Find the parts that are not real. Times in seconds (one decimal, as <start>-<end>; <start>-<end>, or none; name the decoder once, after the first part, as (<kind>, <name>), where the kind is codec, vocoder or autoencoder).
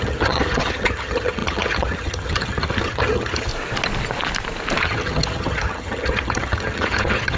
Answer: 0.0-3.5 (vocoder, HiFi-GAN); 4.8-7.4